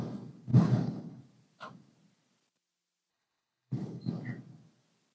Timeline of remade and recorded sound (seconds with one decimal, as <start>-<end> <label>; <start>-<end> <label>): 0.0-0.5 recorded; 0.5-1.2 remade; 1.2-3.1 recorded; 3.1-4.0 remade; 4.0-5.1 recorded